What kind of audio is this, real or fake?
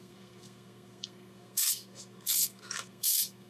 fake